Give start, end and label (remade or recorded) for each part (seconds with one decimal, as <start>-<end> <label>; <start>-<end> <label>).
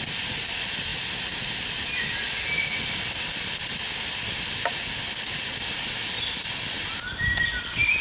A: 0.0-8.0 recorded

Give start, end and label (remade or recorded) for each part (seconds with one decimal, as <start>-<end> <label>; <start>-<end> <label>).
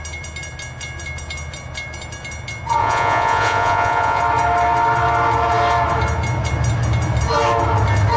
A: 0.0-2.8 recorded; 2.8-4.2 remade; 4.2-8.2 recorded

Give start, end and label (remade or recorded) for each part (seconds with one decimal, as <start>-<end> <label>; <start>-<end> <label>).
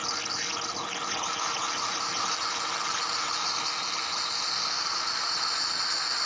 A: 0.0-6.3 recorded